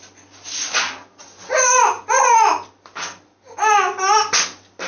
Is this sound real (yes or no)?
yes